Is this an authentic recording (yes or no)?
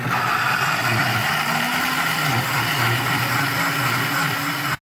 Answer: yes